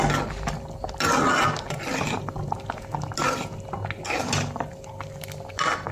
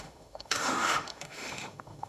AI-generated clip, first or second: second